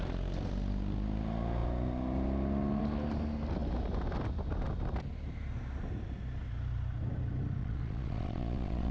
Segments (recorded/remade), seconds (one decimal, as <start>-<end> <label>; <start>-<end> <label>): 0.0-7.6 recorded; 7.6-8.9 remade